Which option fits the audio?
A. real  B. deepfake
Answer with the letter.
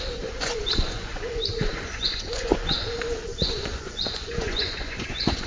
B